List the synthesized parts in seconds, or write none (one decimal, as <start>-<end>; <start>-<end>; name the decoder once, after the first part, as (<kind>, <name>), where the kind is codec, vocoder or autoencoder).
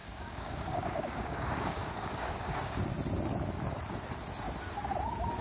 0.0-2.8 (codec, DAC)